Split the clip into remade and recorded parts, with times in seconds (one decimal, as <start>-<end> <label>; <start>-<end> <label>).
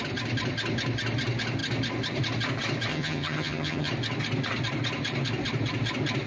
0.0-2.9 recorded; 2.9-3.9 remade; 3.9-6.3 recorded